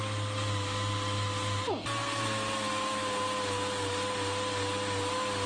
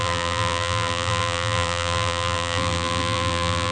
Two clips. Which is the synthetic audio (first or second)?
second